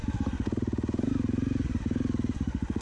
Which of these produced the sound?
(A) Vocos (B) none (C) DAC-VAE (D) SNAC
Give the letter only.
B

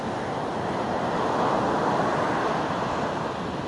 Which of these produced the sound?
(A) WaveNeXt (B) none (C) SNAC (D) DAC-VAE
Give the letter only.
B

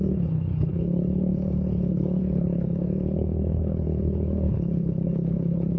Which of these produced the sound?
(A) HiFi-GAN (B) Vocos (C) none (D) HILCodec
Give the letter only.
D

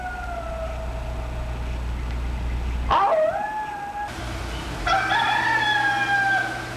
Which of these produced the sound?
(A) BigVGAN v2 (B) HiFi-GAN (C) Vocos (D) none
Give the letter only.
D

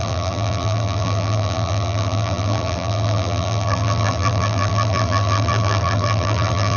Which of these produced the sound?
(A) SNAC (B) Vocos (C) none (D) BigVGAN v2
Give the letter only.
D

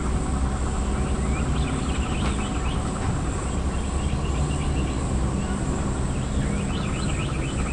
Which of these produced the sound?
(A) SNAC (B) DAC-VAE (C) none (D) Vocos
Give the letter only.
C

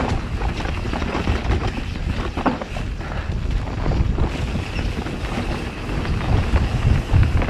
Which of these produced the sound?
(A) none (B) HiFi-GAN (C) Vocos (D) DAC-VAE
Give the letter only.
A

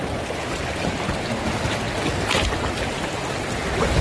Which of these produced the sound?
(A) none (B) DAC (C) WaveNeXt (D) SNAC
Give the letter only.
A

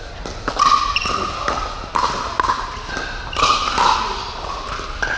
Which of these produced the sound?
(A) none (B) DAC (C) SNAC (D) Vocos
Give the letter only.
A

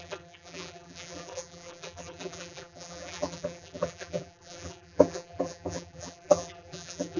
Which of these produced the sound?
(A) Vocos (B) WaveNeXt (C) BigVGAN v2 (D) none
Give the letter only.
C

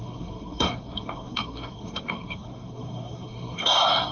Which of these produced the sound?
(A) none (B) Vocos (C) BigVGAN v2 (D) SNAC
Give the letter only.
D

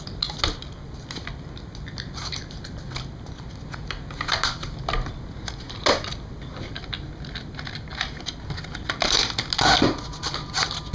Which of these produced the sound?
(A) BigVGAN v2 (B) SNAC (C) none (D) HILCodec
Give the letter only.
C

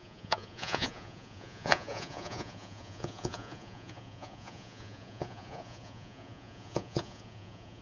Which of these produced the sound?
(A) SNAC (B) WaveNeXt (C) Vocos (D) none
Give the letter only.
C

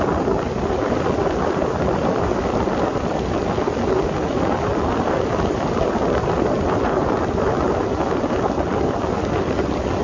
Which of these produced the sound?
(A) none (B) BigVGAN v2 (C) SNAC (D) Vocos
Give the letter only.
A